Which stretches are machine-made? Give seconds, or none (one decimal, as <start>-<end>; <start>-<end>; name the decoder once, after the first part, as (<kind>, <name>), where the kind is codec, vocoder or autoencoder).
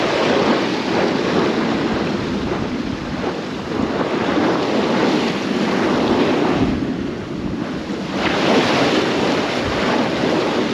none